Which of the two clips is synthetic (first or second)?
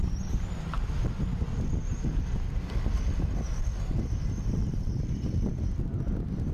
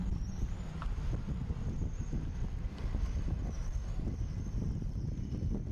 second